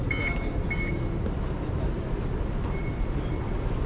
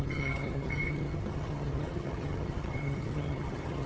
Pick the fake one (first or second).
second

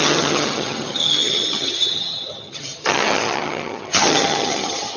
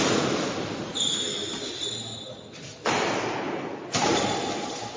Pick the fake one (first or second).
first